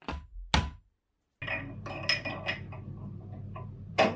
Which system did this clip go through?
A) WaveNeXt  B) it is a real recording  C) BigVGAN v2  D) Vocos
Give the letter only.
B